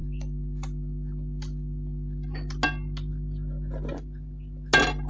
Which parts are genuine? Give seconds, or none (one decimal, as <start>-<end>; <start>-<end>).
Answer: 0.0-5.1